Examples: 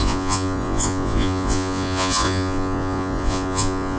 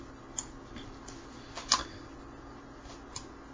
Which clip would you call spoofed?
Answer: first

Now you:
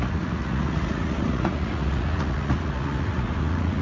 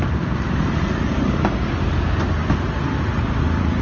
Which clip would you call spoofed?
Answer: first